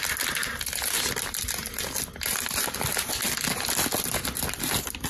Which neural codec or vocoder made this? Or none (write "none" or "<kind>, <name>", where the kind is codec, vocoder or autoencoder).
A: none